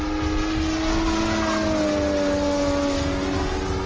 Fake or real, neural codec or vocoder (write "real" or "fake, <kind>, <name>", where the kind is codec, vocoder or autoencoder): real